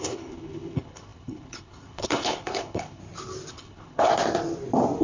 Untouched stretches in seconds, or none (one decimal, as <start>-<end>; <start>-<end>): 3.0-3.5; 4.1-5.0